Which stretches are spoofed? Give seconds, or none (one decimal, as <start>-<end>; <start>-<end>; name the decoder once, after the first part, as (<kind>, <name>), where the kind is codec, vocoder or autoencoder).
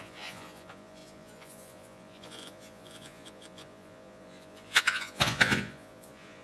0.0-6.4 (vocoder, Vocos)